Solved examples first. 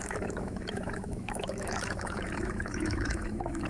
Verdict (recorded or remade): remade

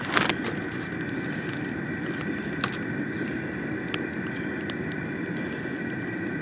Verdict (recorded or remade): recorded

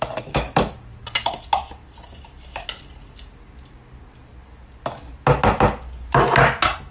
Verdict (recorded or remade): recorded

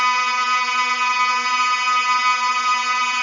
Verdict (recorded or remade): remade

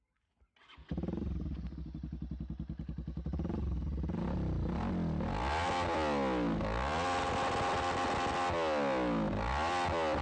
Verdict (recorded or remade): recorded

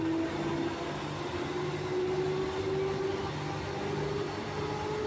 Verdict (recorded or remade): recorded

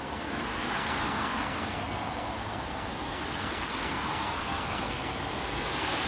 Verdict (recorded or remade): remade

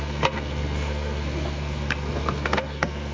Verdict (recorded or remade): remade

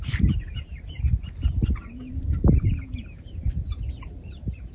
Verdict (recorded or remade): remade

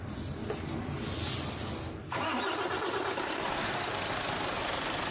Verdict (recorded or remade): recorded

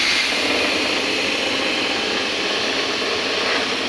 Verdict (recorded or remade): recorded